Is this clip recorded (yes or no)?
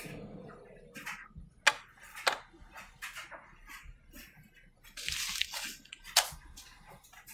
yes